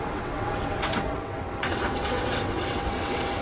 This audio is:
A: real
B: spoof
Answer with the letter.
B